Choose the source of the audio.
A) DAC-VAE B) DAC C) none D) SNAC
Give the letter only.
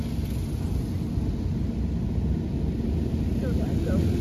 C